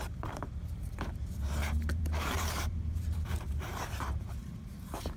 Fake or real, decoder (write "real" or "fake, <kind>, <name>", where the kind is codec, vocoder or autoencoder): fake, vocoder, BigVGAN v2